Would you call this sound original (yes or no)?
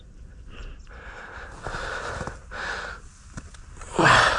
yes